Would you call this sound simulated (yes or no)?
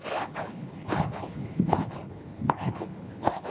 yes